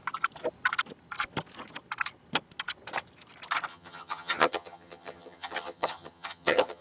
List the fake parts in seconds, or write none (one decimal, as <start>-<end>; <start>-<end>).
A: 3.7-6.8